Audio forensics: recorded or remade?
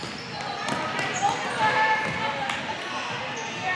recorded